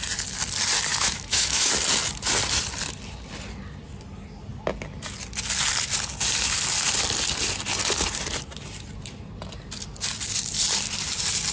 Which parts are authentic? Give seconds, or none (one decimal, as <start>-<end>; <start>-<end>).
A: 0.0-0.9; 1.7-11.5